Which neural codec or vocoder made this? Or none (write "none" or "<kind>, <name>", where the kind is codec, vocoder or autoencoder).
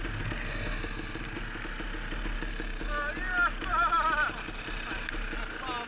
none